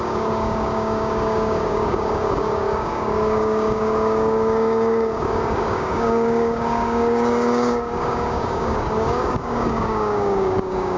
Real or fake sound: fake